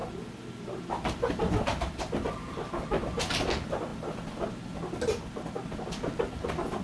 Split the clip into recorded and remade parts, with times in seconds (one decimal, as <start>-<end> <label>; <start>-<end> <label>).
0.0-6.8 recorded